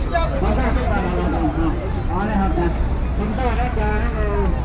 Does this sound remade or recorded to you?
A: recorded